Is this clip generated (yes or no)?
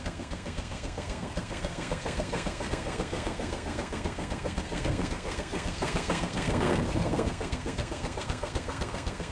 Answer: yes